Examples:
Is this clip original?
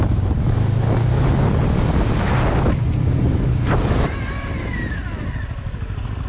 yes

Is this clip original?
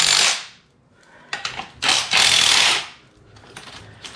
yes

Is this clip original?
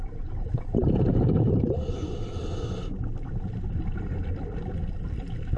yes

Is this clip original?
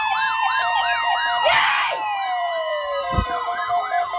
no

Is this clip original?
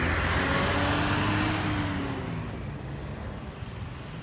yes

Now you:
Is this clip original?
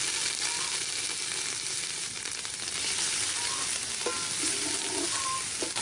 yes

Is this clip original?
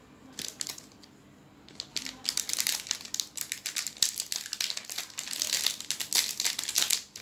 yes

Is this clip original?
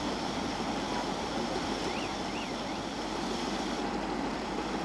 no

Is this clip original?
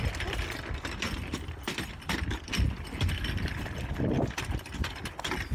yes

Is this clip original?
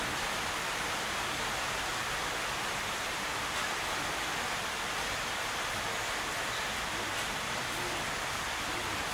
yes